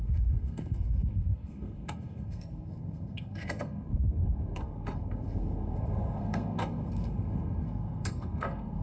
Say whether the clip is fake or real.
fake